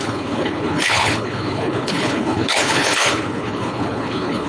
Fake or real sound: fake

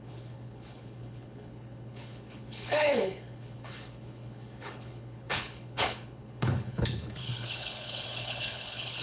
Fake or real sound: fake